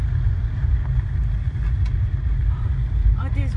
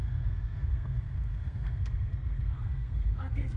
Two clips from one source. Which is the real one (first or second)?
first